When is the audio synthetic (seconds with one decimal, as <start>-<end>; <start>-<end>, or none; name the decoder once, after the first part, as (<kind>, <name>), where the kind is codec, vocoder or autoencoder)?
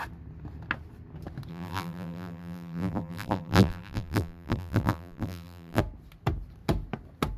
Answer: 1.5-5.8 (vocoder, BigVGAN v2)